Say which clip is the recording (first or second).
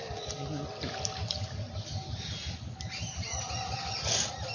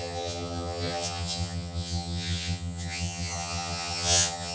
first